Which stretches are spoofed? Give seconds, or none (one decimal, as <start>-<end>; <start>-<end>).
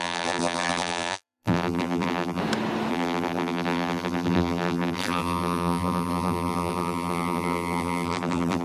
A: 0.0-2.4; 2.9-8.6